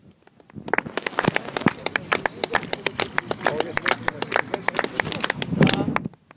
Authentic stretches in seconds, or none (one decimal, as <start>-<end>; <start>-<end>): 0.0-1.5; 4.6-6.4